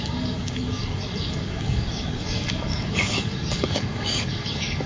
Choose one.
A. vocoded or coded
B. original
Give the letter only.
A